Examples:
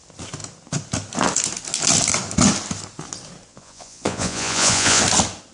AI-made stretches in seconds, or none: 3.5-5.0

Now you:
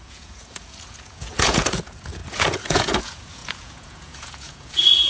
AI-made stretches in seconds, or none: 0.0-5.1